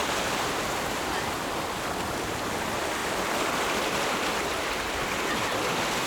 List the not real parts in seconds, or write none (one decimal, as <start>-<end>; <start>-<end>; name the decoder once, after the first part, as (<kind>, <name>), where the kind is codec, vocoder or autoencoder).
none